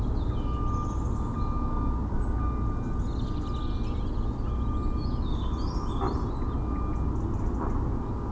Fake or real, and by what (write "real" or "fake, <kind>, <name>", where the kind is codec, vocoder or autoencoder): real